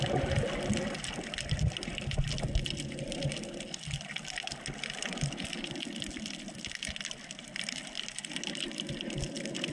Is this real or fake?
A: real